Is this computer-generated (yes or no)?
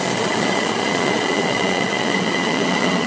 yes